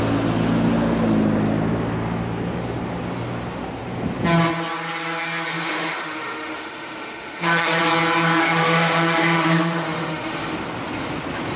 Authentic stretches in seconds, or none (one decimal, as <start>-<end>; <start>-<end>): 0.0-5.5; 7.8-8.4; 10.5-11.6